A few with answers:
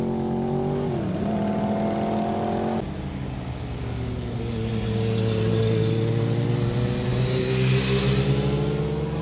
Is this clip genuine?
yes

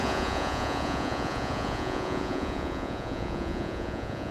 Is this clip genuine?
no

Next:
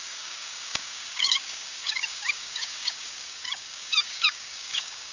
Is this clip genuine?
no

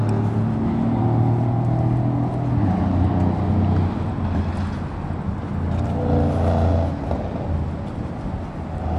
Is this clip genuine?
yes